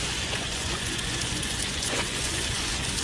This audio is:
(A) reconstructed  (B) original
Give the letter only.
A